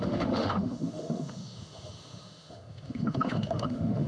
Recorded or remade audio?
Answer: remade